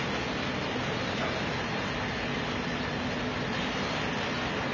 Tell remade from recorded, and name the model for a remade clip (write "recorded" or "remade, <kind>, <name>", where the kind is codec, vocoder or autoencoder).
recorded